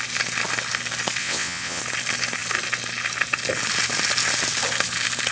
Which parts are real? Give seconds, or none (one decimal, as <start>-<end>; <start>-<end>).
0.0-1.2; 1.8-5.3